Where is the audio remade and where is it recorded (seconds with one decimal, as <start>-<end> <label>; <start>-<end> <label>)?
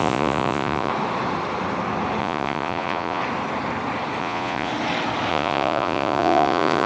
0.0-0.9 remade; 0.9-2.2 recorded; 2.2-3.2 remade; 3.2-4.2 recorded; 4.2-4.7 remade; 4.7-5.3 recorded; 5.3-6.9 remade